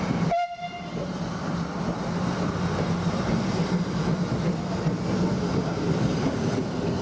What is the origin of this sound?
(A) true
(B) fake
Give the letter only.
A